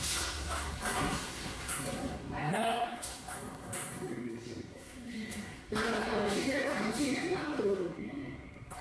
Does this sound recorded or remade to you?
remade